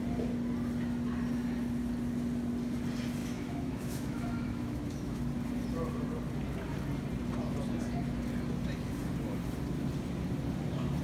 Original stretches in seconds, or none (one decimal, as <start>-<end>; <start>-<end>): 0.0-3.2; 5.2-11.0